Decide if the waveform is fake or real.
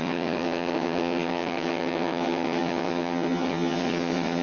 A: fake